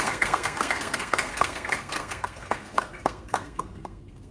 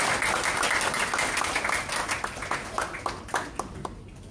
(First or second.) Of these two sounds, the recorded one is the second